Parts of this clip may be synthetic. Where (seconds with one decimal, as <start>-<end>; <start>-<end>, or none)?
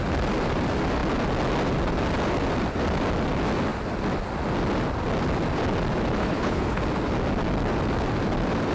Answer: 6.2-6.8